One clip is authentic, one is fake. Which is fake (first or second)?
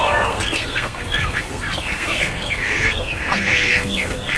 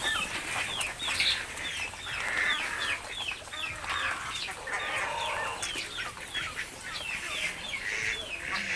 first